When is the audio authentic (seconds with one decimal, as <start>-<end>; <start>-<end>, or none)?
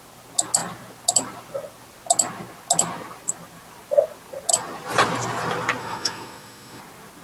0.0-5.8; 6.8-7.2